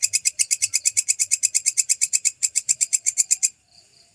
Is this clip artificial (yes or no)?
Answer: yes